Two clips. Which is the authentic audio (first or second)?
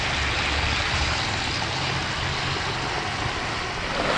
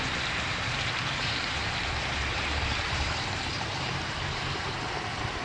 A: first